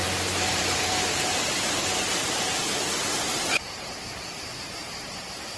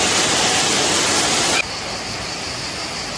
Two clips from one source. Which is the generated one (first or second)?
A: first